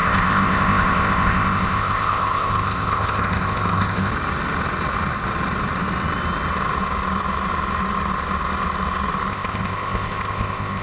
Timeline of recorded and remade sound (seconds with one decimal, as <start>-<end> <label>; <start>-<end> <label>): 0.0-4.1 remade; 4.1-9.3 recorded; 9.3-10.8 remade